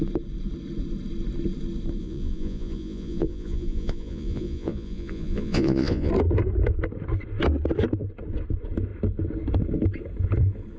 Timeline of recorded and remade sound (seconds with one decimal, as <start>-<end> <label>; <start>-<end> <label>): 0.0-2.0 recorded; 2.0-6.1 remade; 6.1-10.8 recorded